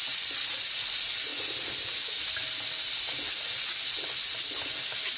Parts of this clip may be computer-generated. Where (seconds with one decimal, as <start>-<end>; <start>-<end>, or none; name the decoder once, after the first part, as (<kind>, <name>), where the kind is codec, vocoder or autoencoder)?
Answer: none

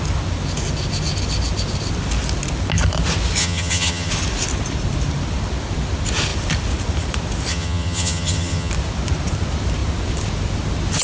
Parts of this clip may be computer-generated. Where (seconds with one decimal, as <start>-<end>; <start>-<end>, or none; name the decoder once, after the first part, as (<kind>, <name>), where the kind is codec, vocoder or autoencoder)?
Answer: 3.4-4.1 (vocoder, HiFi-GAN); 7.5-8.7

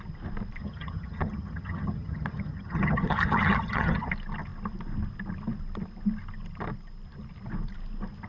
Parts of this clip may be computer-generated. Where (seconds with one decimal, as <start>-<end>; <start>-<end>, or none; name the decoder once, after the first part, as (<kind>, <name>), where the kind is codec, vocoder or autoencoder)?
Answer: 0.6-4.1 (vocoder, HiFi-GAN)

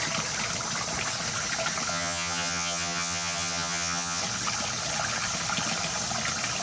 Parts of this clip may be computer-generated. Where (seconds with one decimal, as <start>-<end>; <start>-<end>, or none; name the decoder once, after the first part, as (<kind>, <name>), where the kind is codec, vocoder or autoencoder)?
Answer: 1.9-4.2 (vocoder, HiFi-GAN)

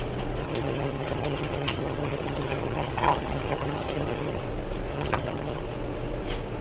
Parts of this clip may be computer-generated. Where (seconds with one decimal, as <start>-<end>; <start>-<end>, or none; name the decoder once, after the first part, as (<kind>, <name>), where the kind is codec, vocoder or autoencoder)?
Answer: 0.4-4.4 (vocoder, HiFi-GAN); 4.9-5.6